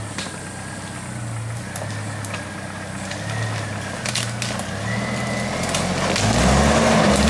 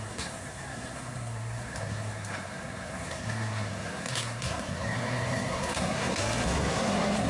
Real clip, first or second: first